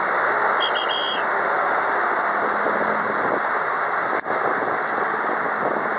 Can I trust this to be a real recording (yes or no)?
yes